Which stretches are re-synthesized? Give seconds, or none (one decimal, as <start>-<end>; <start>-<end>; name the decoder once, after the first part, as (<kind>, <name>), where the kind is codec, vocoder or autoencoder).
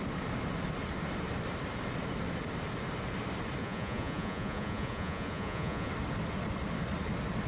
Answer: 3.6-5.9 (vocoder, Vocos)